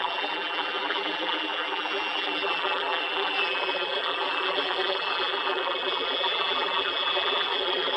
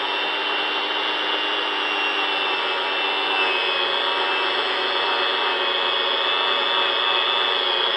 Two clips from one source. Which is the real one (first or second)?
second